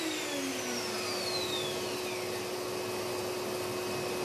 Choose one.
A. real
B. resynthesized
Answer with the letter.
A